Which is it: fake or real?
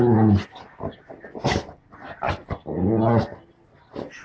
real